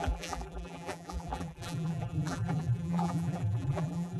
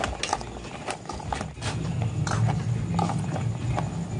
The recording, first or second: second